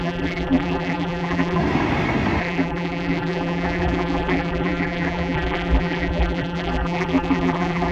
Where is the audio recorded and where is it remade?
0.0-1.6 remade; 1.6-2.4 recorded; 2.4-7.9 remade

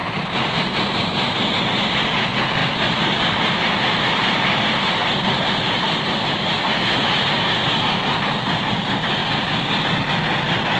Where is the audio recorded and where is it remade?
0.0-1.5 remade; 1.5-2.6 recorded; 2.6-7.5 remade; 7.5-10.8 recorded

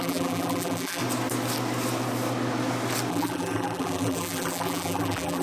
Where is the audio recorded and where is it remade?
0.0-1.0 remade; 1.0-3.1 recorded; 3.1-5.4 remade

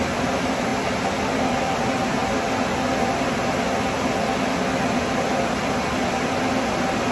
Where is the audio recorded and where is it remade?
0.0-7.1 recorded

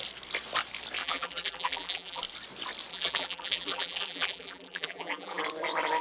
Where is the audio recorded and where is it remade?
0.0-1.0 recorded; 1.0-2.2 remade; 2.2-2.9 recorded; 2.9-5.4 remade; 5.4-6.0 recorded

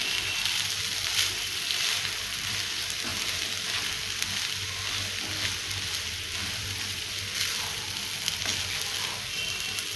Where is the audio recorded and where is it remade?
0.0-3.1 remade; 3.1-6.6 recorded; 6.6-8.5 remade; 8.5-10.0 recorded

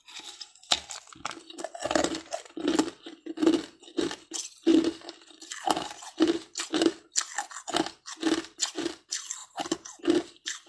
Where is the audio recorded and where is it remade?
0.0-4.7 recorded; 4.7-6.9 remade; 6.9-9.4 recorded; 9.4-10.0 remade; 10.0-10.7 recorded

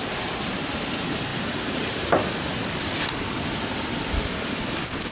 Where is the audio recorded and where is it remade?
0.0-1.3 recorded; 1.3-4.4 remade; 4.4-5.1 recorded